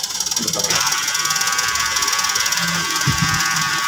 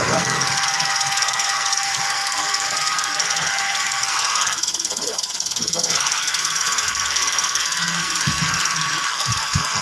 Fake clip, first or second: second